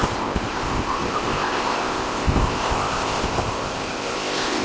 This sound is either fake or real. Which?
fake